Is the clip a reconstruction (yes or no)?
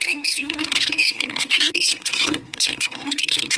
yes